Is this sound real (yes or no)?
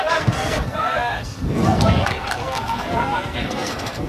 no